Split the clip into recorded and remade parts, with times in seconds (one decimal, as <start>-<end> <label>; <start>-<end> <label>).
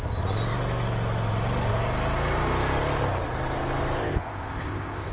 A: 0.0-4.0 recorded; 4.0-5.1 remade